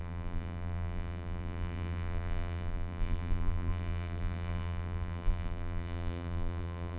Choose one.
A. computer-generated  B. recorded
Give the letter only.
A